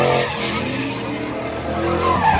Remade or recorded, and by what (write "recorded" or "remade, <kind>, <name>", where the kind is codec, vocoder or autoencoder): recorded